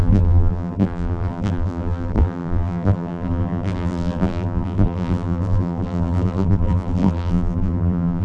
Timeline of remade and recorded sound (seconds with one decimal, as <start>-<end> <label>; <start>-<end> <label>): 0.0-8.2 remade